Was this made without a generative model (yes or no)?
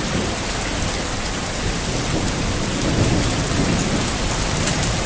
yes